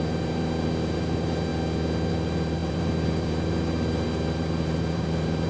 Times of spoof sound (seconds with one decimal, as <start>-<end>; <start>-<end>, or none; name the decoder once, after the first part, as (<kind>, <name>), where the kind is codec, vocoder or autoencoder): 0.0-1.5 (vocoder, BigVGAN v2); 2.1-5.5